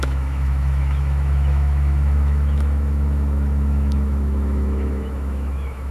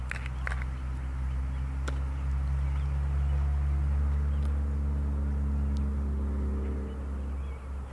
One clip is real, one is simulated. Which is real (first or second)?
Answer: second